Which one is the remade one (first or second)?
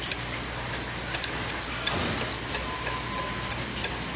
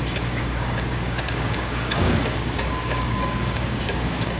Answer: second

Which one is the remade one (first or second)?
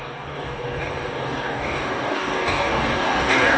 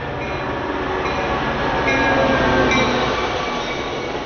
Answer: first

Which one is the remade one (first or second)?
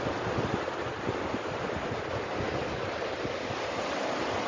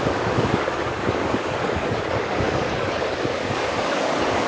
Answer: second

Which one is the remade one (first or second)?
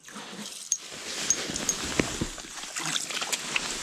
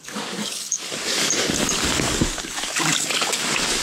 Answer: second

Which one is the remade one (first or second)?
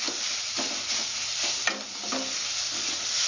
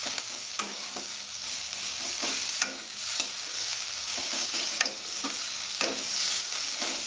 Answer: second